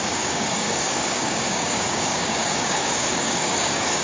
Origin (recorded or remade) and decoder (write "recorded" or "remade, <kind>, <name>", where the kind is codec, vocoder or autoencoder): remade, codec, DAC